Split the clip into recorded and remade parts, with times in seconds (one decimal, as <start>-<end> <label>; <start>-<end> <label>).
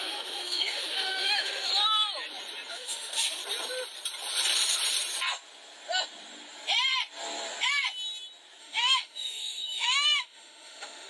0.0-1.7 remade; 1.7-2.7 recorded; 2.7-3.4 remade; 3.4-8.6 recorded; 8.6-11.1 remade